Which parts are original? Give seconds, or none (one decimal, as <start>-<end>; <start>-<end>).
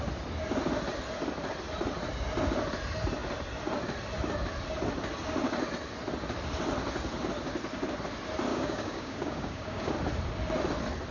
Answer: 0.0-8.5; 9.9-11.1